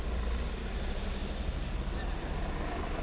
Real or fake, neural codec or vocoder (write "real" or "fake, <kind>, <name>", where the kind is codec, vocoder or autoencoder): real